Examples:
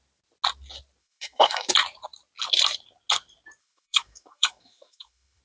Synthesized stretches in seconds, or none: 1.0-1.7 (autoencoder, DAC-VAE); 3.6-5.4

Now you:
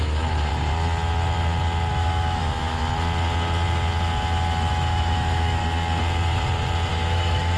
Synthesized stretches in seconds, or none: 0.0-0.5 (autoencoder, DAC-VAE); 1.9-2.8; 4.7-5.6; 6.9-7.6

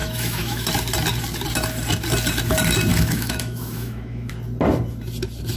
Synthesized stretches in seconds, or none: 0.0-0.7 (autoencoder, DAC-VAE); 2.9-4.3